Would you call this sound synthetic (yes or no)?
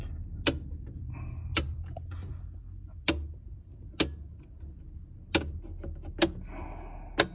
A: no